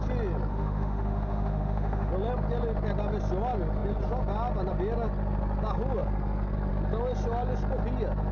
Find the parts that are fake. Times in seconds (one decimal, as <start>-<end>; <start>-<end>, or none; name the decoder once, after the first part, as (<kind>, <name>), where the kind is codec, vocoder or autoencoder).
0.5-2.1 (autoencoder, DAC-VAE)